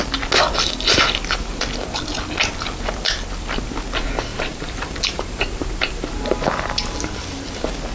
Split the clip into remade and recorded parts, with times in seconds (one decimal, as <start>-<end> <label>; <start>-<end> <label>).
0.0-4.3 recorded; 4.3-7.0 remade; 7.0-7.9 recorded